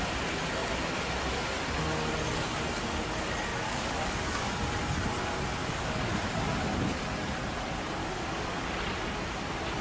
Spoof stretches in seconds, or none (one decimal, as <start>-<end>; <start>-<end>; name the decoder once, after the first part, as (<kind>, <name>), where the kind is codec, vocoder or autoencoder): 3.5-4.5 (codec, DAC); 5.6-6.1; 8.0-8.6